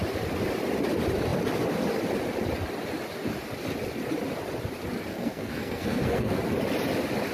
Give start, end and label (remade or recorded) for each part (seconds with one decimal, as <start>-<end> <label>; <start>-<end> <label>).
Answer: 0.0-5.1 recorded; 5.1-6.4 remade; 6.4-7.3 recorded